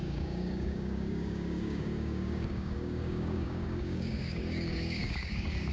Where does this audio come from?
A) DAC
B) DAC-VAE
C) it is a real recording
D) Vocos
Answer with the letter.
A